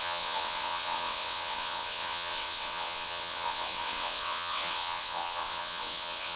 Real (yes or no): no